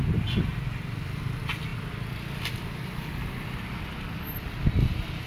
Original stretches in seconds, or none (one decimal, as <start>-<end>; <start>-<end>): 0.0-5.3